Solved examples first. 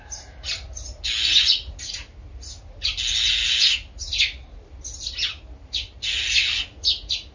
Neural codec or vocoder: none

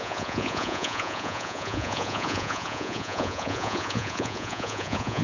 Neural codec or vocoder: vocoder, Vocos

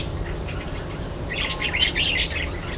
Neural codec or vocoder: none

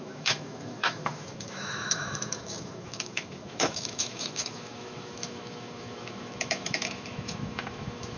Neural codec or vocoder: autoencoder, DAC-VAE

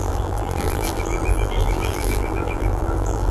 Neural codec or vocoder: vocoder, BigVGAN v2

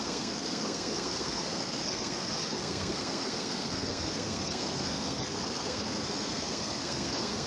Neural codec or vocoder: codec, SNAC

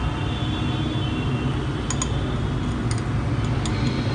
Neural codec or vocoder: none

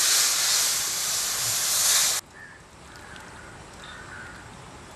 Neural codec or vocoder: none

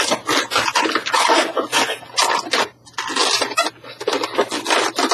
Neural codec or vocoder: none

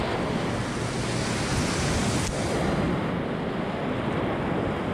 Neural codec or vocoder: none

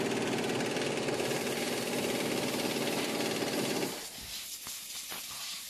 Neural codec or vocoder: none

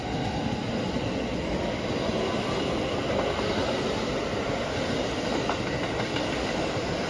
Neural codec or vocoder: none